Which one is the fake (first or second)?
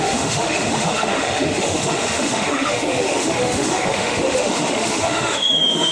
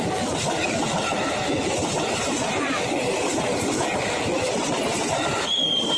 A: first